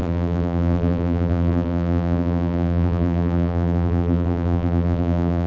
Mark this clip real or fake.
fake